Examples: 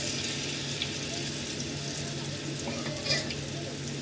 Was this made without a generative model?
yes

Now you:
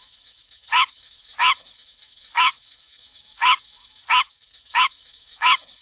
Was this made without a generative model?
no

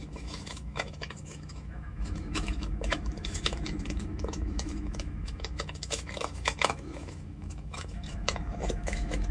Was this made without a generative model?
no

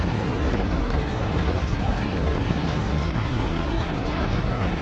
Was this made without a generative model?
no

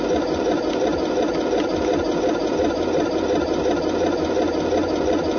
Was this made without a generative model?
no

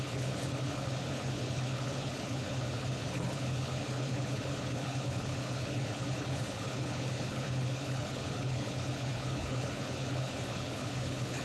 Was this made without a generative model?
no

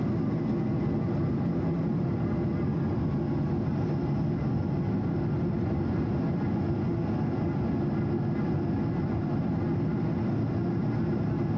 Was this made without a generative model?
yes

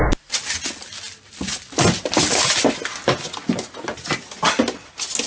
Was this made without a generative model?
yes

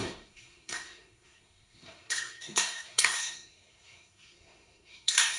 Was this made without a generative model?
no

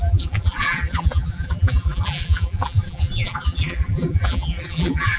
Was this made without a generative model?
no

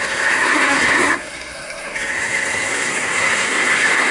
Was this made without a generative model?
no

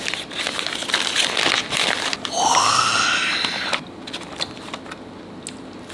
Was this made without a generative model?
yes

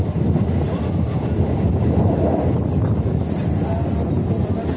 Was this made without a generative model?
yes